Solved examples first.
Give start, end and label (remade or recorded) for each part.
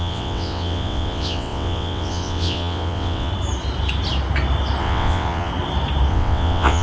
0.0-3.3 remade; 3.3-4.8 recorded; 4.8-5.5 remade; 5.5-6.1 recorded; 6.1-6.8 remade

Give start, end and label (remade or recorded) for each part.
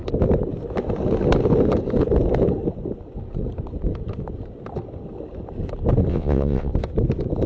0.0-6.1 recorded; 6.1-6.7 remade; 6.7-7.5 recorded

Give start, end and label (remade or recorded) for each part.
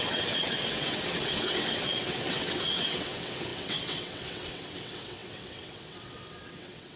0.0-7.0 remade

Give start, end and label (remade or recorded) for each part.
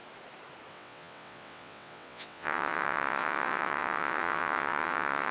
0.0-0.7 recorded; 0.7-5.3 remade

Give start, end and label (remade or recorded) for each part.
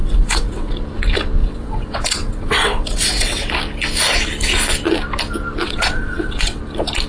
0.0-0.7 remade; 0.7-1.4 recorded; 1.4-3.5 remade; 3.5-5.6 recorded; 5.6-6.6 remade; 6.6-7.1 recorded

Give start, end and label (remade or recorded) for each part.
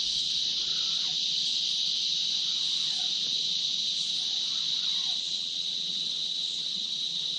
0.0-0.7 remade; 0.7-4.8 recorded; 4.8-7.4 remade